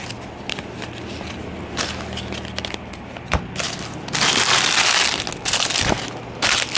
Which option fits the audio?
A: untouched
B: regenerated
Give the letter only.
A